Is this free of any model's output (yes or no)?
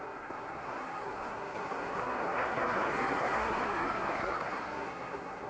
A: no